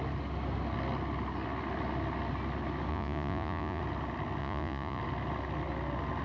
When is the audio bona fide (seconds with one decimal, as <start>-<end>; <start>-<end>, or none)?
0.0-2.9; 3.8-4.4; 5.0-6.2